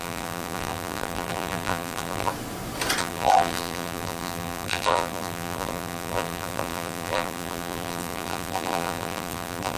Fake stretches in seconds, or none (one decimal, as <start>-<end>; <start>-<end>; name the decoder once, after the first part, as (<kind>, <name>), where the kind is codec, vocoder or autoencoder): 0.0-2.3 (vocoder, BigVGAN v2); 3.0-9.8